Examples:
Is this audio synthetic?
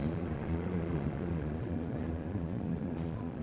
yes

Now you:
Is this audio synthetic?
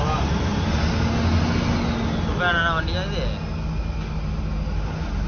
no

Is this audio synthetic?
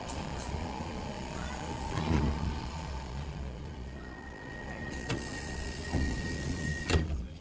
yes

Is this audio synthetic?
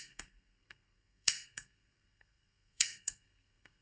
yes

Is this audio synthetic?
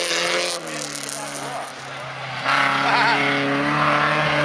no